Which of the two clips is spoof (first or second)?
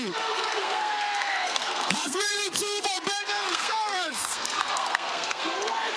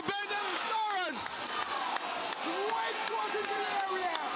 first